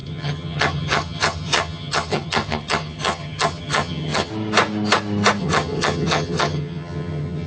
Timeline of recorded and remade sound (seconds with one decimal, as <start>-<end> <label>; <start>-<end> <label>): 0.0-4.3 remade; 4.3-5.4 recorded; 5.4-7.5 remade